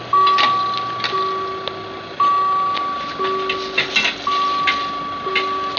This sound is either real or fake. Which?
real